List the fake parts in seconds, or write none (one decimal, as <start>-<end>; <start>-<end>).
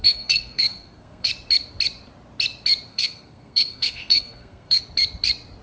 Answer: 0.0-1.3; 2.9-4.8